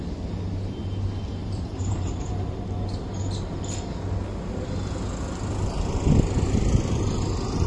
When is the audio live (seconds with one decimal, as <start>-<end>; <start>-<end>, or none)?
0.0-1.4; 2.3-7.7